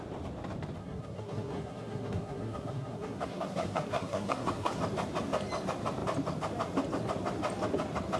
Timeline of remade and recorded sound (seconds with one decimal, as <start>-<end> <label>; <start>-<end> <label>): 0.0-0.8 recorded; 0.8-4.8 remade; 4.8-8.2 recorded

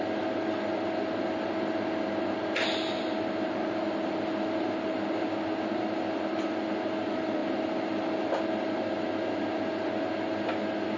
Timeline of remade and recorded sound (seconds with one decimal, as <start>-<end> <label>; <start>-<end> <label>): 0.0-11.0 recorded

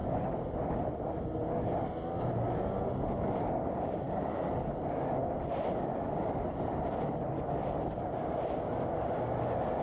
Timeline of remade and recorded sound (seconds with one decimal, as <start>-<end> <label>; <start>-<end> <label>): 0.0-9.8 recorded